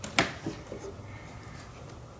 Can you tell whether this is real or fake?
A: real